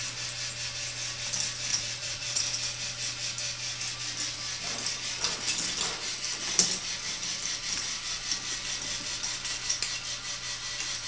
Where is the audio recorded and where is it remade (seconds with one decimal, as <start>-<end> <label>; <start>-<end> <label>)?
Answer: 0.0-1.7 recorded; 1.7-2.4 remade; 2.4-11.1 recorded